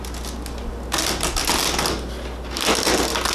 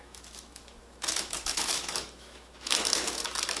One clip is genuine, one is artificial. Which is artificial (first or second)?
second